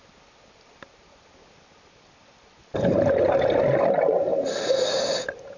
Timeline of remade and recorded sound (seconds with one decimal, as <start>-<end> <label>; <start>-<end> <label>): 0.0-5.6 recorded